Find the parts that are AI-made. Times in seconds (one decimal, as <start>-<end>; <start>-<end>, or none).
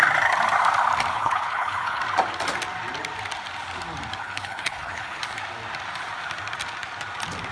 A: 1.1-2.0; 4.2-5.2